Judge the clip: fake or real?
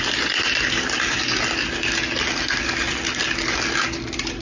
real